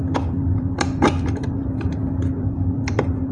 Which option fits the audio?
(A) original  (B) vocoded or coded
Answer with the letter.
B